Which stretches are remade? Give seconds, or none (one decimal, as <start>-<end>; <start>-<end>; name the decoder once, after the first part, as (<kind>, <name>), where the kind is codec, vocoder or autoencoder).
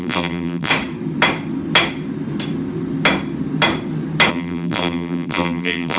0.0-0.7 (vocoder, BigVGAN v2); 4.3-6.0